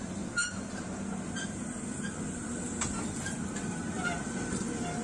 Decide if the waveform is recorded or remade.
recorded